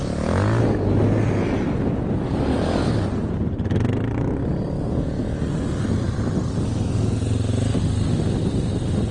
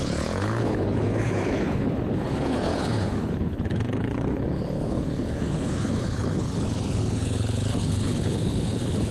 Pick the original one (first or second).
first